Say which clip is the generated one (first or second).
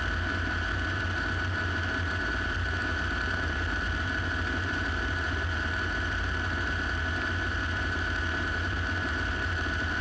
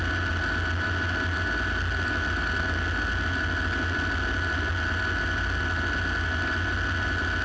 first